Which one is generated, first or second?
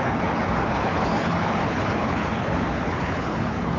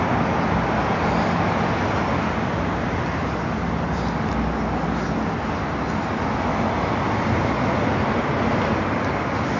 first